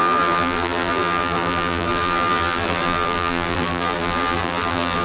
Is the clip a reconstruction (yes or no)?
yes